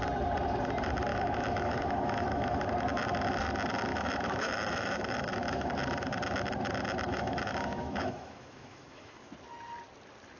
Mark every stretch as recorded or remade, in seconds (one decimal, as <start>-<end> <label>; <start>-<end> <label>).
0.0-1.1 recorded; 1.1-2.6 remade; 2.6-3.9 recorded; 3.9-5.7 remade; 5.7-7.1 recorded; 7.1-9.3 remade; 9.3-10.4 recorded